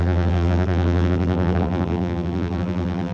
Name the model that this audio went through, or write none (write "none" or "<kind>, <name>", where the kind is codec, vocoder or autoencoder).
vocoder, BigVGAN v2